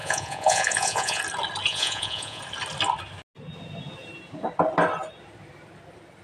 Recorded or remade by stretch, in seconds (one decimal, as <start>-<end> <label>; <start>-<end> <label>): 0.0-1.2 remade; 1.2-1.7 recorded; 1.7-2.4 remade; 2.4-6.2 recorded